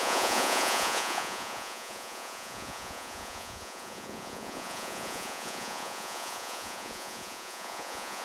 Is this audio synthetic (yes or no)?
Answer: yes